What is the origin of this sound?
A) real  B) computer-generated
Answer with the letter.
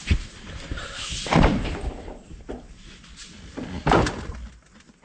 A